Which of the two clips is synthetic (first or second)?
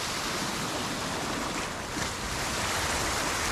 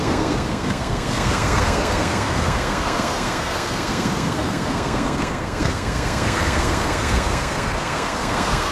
second